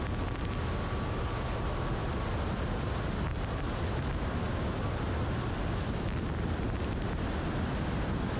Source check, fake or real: real